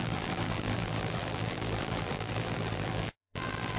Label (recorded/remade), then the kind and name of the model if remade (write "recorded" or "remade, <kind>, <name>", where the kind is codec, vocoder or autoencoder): remade, vocoder, BigVGAN v2